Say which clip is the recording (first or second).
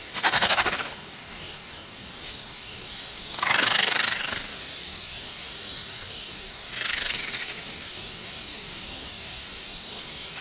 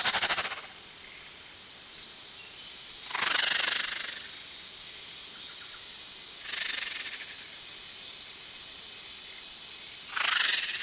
second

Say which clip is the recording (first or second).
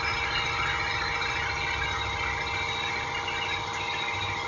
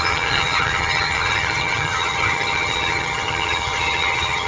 first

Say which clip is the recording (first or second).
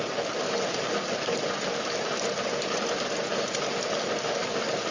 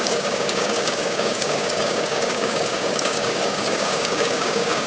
first